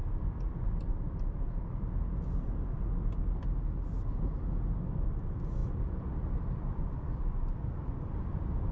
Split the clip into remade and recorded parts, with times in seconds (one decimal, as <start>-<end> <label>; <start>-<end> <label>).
0.0-5.6 recorded; 5.6-8.7 remade